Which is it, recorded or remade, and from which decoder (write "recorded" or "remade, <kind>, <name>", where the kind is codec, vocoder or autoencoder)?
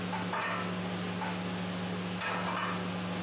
recorded